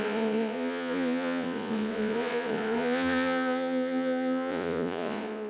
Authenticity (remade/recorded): remade